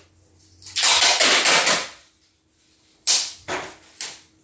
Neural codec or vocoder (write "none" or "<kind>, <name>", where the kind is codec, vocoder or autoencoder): none